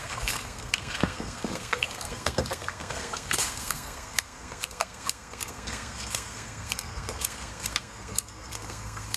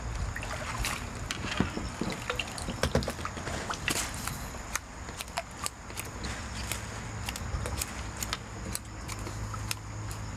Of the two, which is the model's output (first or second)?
first